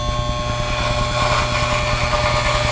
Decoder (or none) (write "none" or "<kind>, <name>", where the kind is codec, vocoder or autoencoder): none